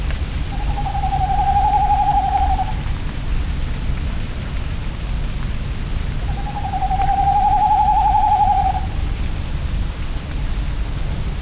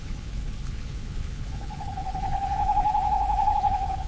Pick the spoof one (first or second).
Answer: second